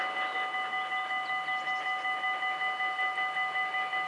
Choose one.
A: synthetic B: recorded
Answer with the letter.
B